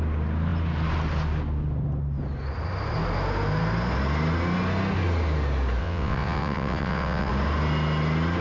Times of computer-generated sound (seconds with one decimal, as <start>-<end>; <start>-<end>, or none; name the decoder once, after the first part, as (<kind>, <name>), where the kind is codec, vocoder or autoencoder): 5.8-7.3 (vocoder, WaveNeXt)